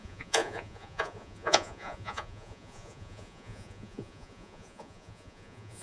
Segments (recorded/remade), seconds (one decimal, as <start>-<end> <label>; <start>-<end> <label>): 0.0-5.8 remade